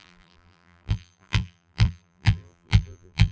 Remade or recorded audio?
remade